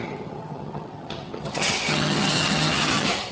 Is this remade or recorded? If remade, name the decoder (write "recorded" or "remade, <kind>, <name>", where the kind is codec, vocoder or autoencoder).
remade, vocoder, HiFi-GAN